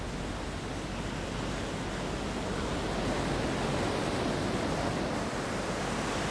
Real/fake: real